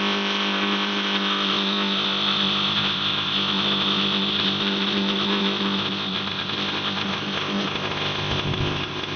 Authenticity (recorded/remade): remade